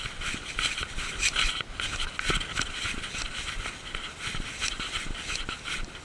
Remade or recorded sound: recorded